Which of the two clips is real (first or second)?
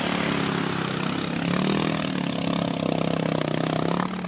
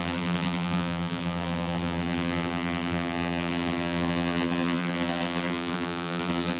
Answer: first